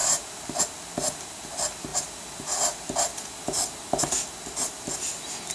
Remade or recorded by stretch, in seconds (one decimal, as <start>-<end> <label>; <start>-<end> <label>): 0.0-5.5 recorded